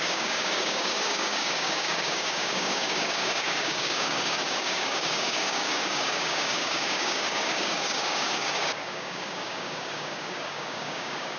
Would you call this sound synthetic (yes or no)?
yes